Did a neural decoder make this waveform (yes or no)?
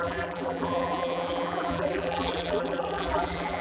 yes